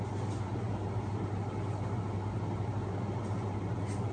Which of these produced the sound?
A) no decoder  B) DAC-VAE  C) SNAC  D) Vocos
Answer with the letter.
A